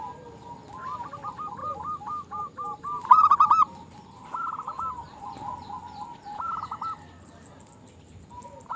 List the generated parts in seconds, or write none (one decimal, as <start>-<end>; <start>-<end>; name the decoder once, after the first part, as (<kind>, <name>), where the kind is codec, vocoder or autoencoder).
1.6-3.5 (vocoder, BigVGAN v2)